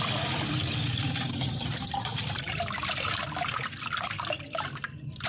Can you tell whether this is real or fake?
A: fake